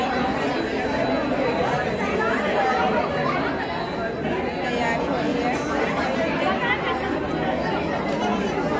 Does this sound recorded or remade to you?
recorded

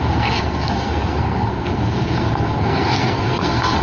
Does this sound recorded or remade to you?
remade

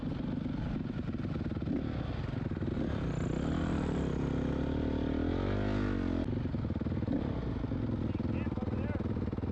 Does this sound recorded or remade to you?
recorded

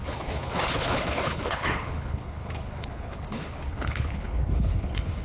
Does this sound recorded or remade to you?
remade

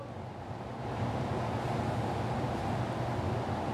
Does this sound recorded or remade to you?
recorded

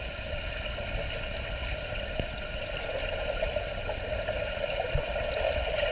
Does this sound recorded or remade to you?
recorded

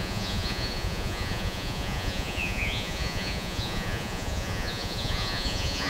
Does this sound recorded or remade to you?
remade